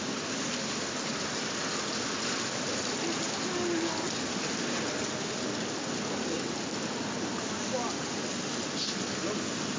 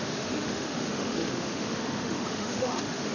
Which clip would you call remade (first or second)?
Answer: second